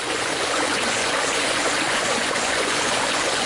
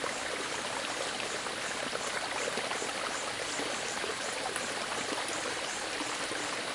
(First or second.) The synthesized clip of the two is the first